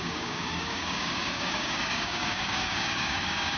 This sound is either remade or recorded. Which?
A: remade